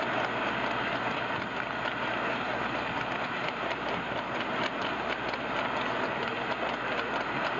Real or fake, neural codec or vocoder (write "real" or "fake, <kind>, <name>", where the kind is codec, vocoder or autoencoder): real